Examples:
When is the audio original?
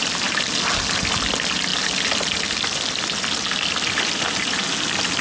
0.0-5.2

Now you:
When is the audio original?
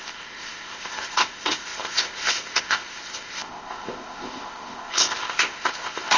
none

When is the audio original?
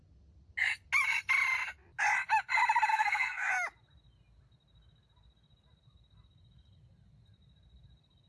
0.0-2.9; 3.5-8.3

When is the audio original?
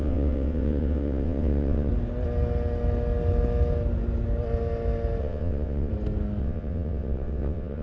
1.9-5.2; 5.9-6.4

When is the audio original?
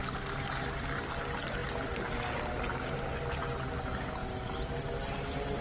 0.0-5.6